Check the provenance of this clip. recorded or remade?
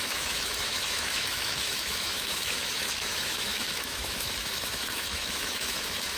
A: remade